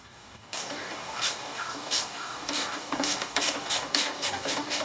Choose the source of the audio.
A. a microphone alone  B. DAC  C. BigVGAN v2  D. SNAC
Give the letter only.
B